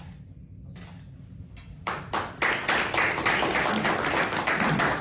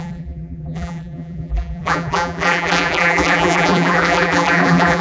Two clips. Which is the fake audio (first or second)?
second